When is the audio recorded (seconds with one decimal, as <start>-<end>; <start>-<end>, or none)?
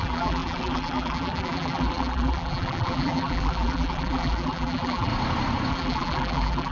5.1-5.7